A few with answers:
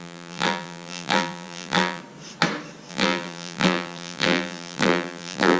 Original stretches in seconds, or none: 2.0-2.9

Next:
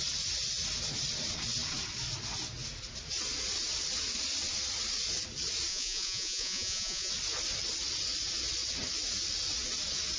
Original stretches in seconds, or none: 0.0-5.7; 7.1-10.2

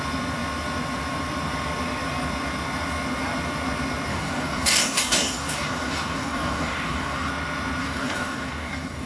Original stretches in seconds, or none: 0.0-4.1; 7.3-7.8

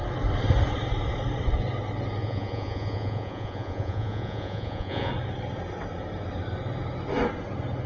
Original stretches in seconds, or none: 0.0-2.2; 5.1-7.9